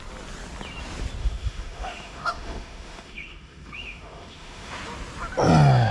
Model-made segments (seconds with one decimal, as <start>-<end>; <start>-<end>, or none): 1.2-4.7